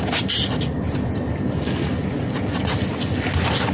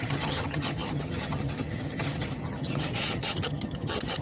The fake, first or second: second